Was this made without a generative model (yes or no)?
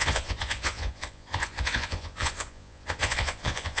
no